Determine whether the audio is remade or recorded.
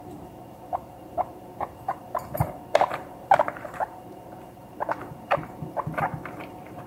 remade